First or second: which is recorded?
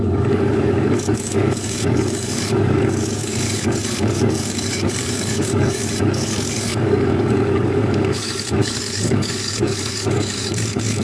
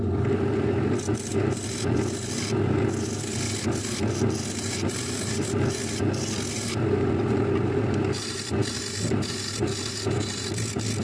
second